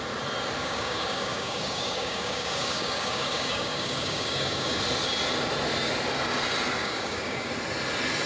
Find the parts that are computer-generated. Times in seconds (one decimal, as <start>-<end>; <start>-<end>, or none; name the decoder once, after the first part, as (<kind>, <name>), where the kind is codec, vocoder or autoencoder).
0.6-4.8 (codec, DAC); 6.8-7.5